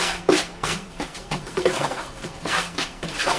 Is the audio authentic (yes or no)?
no